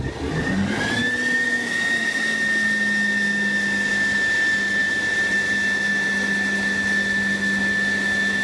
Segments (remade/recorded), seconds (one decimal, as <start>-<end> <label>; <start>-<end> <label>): 0.0-8.4 recorded